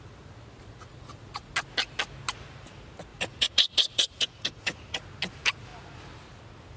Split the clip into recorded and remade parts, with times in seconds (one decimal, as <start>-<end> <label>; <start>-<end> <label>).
0.0-0.7 recorded; 0.7-1.5 remade; 1.5-3.1 recorded; 3.1-5.0 remade; 5.0-6.8 recorded